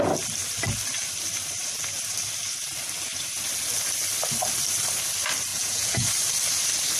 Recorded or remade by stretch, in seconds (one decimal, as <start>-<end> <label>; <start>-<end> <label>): 0.0-5.5 recorded; 5.5-6.1 remade; 6.1-7.0 recorded

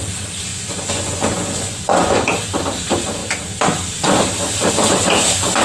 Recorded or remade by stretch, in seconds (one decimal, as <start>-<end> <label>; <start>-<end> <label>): 0.0-0.5 recorded; 0.5-2.3 remade; 2.3-5.6 recorded

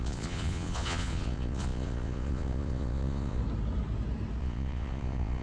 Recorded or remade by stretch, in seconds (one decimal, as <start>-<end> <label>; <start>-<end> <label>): 0.0-3.4 remade; 3.4-4.4 recorded; 4.4-5.4 remade